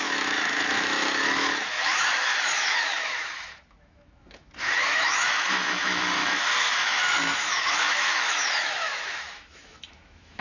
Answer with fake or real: fake